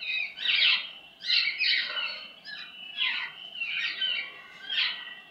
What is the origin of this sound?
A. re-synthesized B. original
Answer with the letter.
B